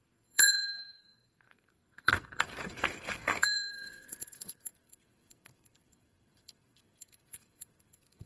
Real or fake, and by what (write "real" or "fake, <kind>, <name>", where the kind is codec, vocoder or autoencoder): fake, codec, SNAC